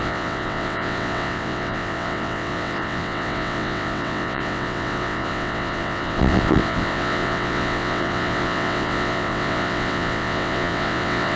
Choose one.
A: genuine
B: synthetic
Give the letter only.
B